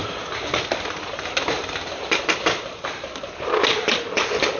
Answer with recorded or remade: recorded